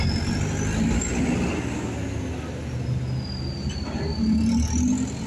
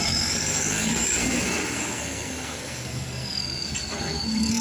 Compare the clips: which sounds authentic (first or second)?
first